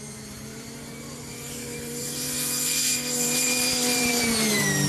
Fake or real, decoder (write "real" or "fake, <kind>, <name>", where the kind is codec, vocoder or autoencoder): fake, vocoder, BigVGAN v2